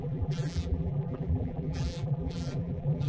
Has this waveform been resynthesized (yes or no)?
yes